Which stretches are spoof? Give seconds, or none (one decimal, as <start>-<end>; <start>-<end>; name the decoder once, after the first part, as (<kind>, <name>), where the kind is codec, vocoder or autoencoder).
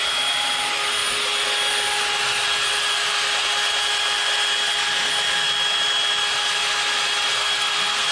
7.3-8.1 (codec, SNAC)